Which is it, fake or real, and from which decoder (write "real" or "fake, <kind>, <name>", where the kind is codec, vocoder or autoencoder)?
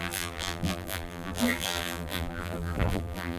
fake, vocoder, BigVGAN v2